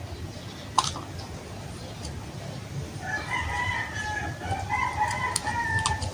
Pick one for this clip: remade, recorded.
recorded